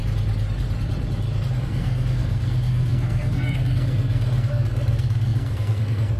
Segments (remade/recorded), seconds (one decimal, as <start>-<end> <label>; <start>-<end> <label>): 0.0-1.6 recorded; 1.6-6.2 remade